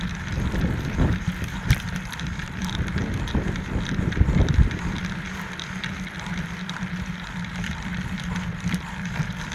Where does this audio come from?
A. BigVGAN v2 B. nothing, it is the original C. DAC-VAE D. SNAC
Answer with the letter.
A